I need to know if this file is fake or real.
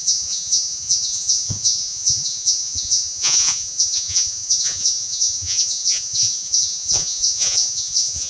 fake